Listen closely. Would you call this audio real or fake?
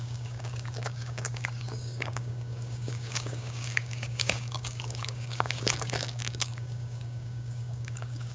fake